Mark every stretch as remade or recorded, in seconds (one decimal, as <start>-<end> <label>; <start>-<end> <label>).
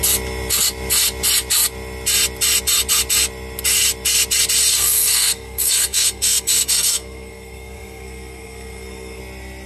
0.0-4.7 recorded; 4.7-9.2 remade; 9.2-9.7 recorded